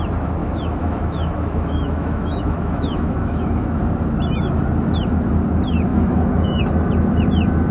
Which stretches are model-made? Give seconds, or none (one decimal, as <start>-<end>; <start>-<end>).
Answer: 0.4-3.8; 5.9-6.6